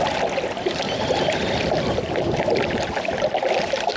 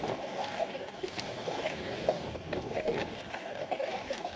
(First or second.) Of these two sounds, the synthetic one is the second